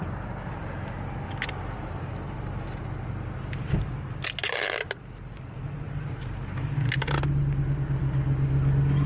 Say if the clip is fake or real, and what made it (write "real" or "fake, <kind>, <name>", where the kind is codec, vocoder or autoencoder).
real